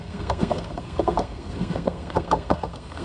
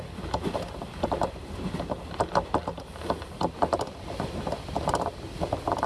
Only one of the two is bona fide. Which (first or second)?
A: second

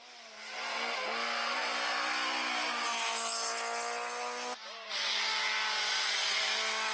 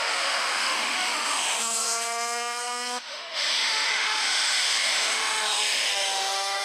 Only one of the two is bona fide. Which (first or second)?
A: first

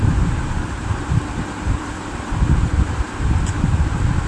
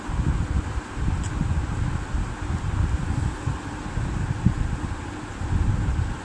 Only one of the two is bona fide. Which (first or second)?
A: second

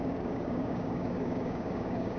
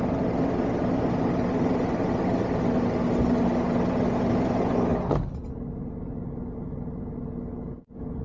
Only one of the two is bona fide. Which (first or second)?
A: second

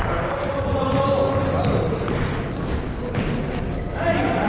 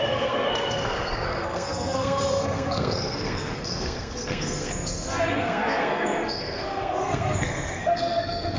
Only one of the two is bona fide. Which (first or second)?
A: first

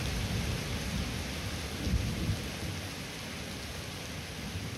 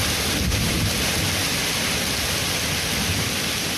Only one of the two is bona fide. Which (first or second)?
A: first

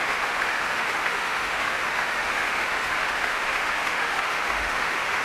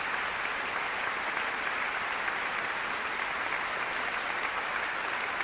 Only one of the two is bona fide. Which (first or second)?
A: second